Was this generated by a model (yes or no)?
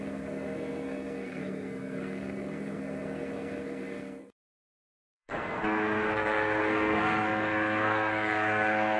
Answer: yes